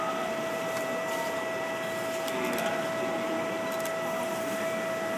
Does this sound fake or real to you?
real